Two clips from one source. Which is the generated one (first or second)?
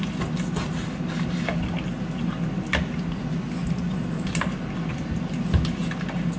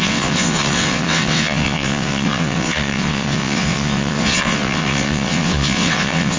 second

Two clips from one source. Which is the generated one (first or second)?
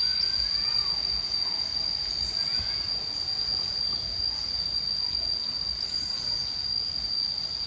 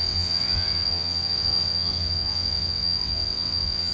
second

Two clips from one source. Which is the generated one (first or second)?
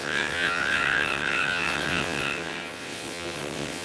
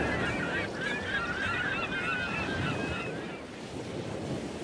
first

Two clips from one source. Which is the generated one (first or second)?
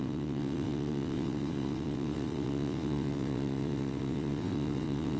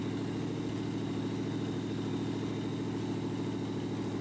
first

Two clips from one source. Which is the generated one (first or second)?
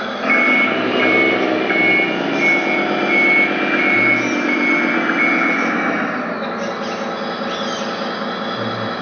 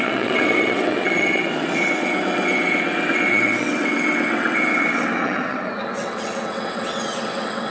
second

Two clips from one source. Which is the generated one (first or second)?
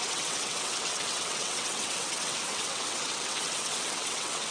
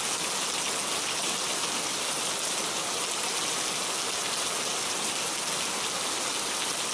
first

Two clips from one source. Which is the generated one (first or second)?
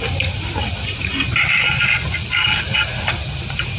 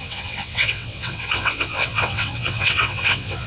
second